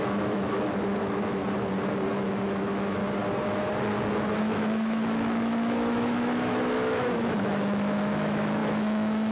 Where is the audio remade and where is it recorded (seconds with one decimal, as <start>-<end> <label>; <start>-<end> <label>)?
0.0-1.4 remade; 1.4-2.1 recorded; 2.1-3.0 remade; 3.0-4.4 recorded; 4.4-9.3 remade